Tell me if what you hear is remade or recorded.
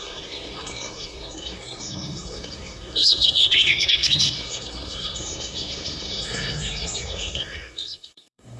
remade